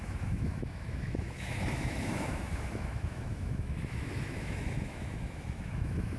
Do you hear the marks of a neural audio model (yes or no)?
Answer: yes